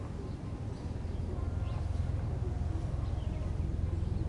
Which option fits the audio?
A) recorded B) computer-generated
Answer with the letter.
A